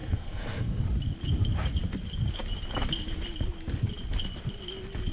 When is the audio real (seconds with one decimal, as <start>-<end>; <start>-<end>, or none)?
0.8-5.1